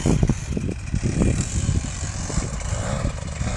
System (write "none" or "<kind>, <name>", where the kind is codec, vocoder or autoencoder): none